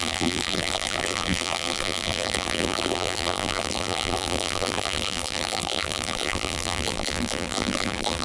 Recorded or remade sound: remade